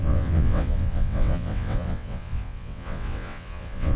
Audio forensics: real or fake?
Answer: fake